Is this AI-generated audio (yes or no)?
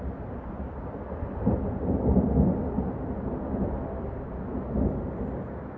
no